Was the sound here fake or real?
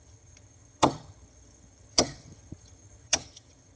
fake